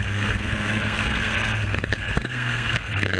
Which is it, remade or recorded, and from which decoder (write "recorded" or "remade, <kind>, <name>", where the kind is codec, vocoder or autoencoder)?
remade, codec, SNAC